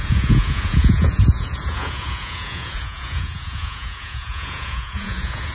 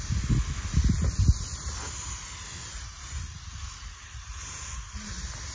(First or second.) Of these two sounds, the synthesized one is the first